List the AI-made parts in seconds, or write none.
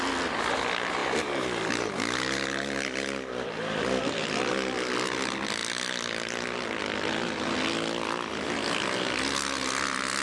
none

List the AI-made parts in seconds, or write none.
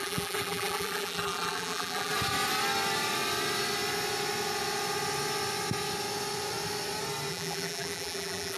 0.0-2.1 (vocoder, BigVGAN v2); 7.3-8.6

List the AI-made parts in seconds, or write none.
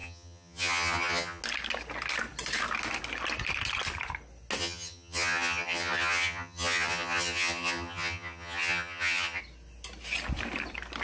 0.0-1.4 (vocoder, HiFi-GAN); 4.6-9.4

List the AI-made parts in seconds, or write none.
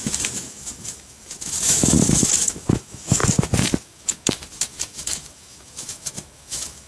0.0-3.2 (autoencoder, DAC-VAE); 3.8-6.9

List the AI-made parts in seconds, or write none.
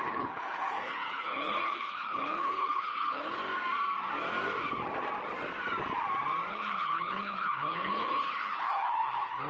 0.0-3.4 (codec, HILCodec); 6.5-9.5